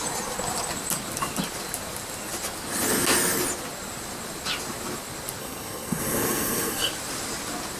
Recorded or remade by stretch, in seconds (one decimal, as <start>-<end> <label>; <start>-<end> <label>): 0.0-5.4 recorded; 5.4-6.9 remade; 6.9-7.8 recorded